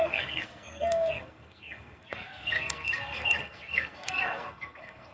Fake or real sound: fake